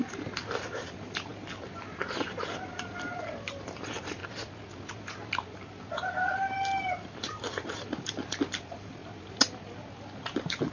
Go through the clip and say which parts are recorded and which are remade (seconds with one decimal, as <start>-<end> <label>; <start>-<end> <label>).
0.0-1.3 remade; 1.3-2.5 recorded; 2.5-4.2 remade; 4.2-7.3 recorded; 7.3-9.0 remade; 9.0-10.2 recorded; 10.2-10.7 remade